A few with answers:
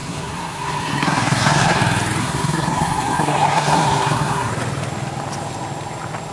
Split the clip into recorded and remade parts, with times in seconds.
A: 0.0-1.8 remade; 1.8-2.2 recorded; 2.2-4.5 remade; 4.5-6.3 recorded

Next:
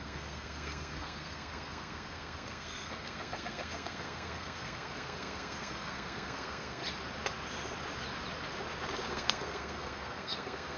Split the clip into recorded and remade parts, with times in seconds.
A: 0.0-6.8 remade; 6.8-9.1 recorded; 9.1-10.8 remade

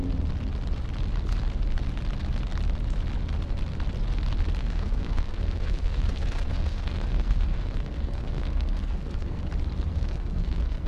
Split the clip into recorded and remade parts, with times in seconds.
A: 0.0-4.6 recorded; 4.6-9.4 remade; 9.4-9.9 recorded; 9.9-10.9 remade

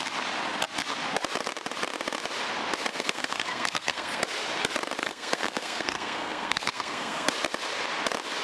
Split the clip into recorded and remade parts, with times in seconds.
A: 0.0-2.9 recorded; 2.9-4.2 remade; 4.2-5.0 recorded; 5.0-7.3 remade; 7.3-8.4 recorded